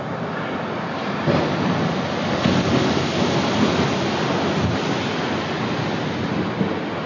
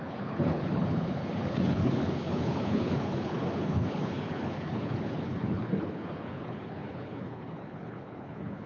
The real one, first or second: first